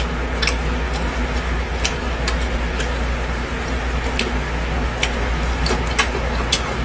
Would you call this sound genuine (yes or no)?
yes